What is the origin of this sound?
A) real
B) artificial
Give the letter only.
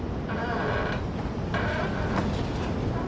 A